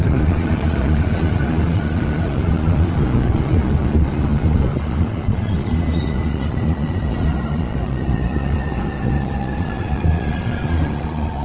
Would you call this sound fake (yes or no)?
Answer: yes